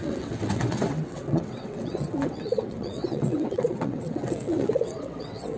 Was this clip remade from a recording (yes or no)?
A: yes